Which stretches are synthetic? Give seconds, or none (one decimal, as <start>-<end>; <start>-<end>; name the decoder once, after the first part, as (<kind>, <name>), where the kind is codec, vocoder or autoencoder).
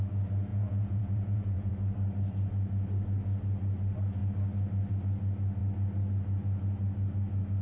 0.5-1.7 (vocoder, Vocos)